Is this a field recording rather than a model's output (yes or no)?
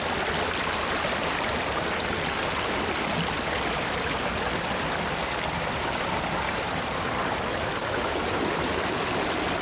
yes